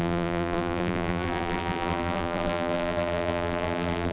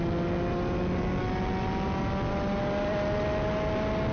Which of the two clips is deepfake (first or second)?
first